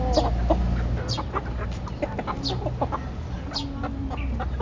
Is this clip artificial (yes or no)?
no